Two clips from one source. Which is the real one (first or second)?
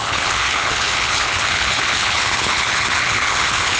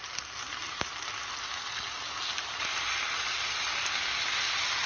second